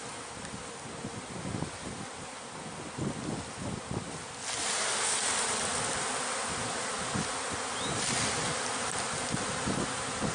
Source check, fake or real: real